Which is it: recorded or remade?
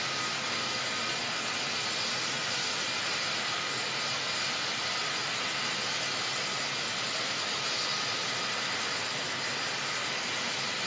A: recorded